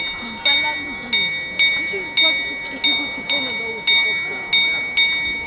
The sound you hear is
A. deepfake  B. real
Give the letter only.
B